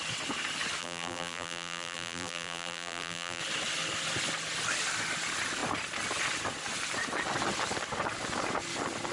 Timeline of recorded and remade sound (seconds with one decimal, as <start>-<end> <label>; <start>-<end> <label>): 0.0-0.8 recorded; 0.8-3.4 remade; 3.4-9.1 recorded